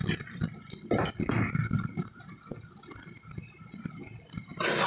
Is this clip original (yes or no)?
yes